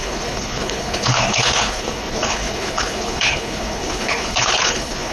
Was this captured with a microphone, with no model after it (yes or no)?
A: no